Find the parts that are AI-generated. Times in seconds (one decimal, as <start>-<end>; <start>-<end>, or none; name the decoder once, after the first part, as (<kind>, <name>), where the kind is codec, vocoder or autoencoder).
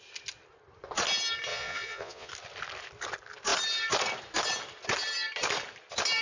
1.5-2.3 (vocoder, Vocos)